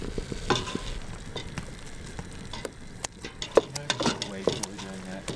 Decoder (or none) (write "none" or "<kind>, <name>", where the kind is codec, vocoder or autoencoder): none